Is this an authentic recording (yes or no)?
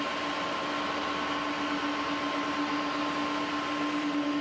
yes